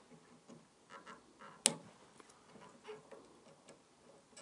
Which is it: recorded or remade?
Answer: recorded